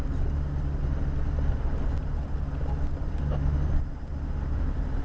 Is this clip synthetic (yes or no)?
no